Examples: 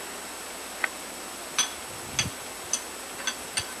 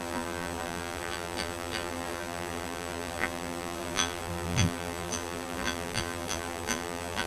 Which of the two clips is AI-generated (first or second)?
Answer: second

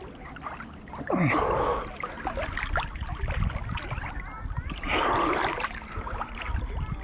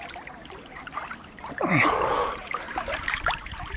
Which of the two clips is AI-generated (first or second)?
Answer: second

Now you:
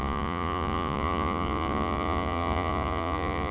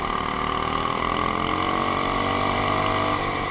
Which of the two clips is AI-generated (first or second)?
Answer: first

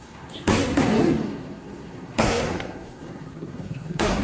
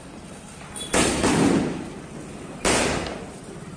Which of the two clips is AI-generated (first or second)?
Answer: first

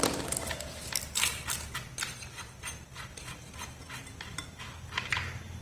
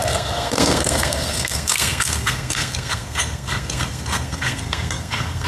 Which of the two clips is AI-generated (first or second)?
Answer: second